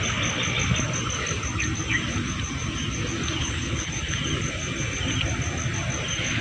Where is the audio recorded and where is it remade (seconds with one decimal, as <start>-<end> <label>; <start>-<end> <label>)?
0.0-3.4 recorded; 3.4-3.9 remade; 3.9-6.4 recorded